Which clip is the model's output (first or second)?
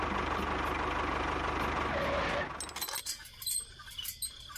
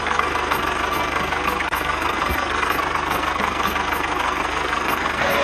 second